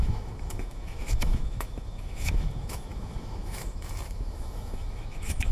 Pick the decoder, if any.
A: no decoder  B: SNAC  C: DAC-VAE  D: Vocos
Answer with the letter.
C